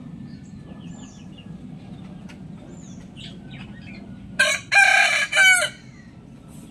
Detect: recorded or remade recorded